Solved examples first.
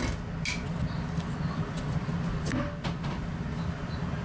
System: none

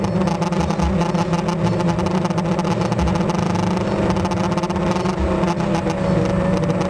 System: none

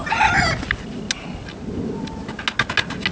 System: none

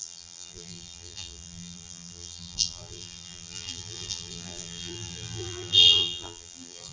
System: vocoder, BigVGAN v2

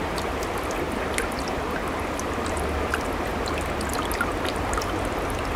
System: none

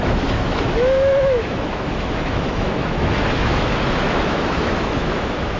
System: autoencoder, DAC-VAE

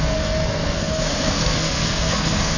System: codec, SNAC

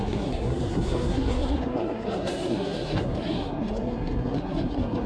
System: codec, SNAC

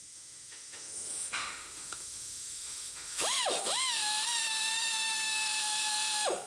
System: autoencoder, DAC-VAE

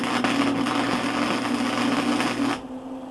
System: none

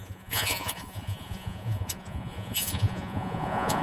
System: vocoder, Vocos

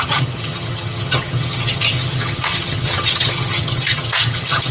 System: vocoder, HiFi-GAN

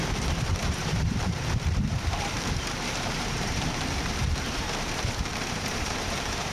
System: vocoder, BigVGAN v2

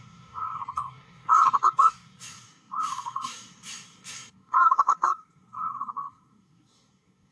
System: codec, SNAC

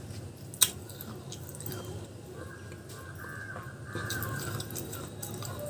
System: none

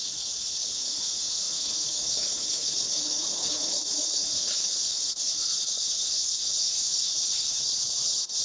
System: codec, HILCodec